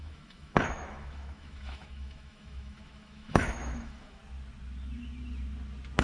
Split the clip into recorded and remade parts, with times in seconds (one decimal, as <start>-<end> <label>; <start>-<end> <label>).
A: 0.0-4.2 remade; 4.2-6.0 recorded